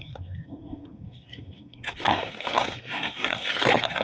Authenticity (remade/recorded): remade